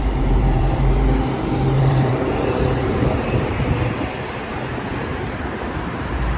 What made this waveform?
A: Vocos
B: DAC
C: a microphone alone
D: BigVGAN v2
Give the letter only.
D